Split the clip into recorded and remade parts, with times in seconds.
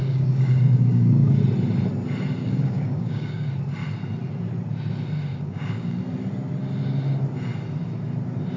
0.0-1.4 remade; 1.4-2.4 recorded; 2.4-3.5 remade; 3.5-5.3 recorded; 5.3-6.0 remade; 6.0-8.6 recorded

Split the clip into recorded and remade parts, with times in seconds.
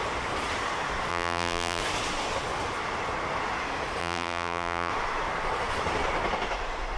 0.0-1.1 recorded; 1.1-1.8 remade; 1.8-4.0 recorded; 4.0-4.9 remade; 4.9-7.0 recorded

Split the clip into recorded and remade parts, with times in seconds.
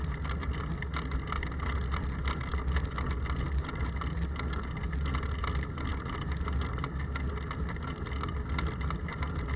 0.0-9.6 recorded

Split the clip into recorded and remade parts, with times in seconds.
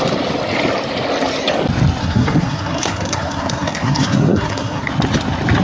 0.0-2.0 recorded; 2.0-4.9 remade; 4.9-5.6 recorded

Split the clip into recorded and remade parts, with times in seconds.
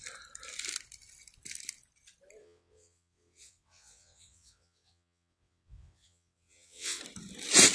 0.0-2.4 recorded; 2.4-7.0 remade; 7.0-7.7 recorded